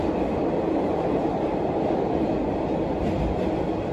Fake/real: real